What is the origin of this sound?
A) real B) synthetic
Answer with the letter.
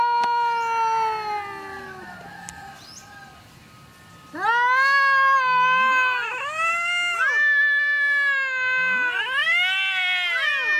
A